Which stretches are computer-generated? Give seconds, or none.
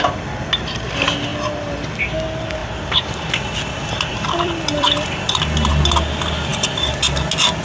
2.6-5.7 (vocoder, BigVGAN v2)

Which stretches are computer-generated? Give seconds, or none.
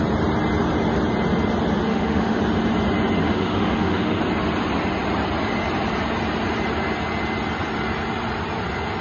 1.9-2.4 (autoencoder, DAC-VAE); 3.2-4.2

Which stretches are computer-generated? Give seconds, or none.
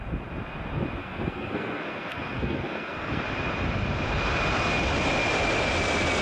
1.0-3.2 (codec, SNAC)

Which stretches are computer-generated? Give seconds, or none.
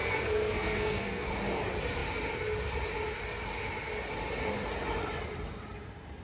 0.0-1.3 (codec, SNAC)